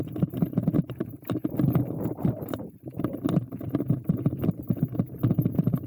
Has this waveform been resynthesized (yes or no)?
yes